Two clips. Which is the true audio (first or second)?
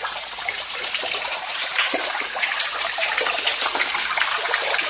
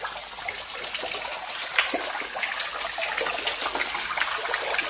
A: second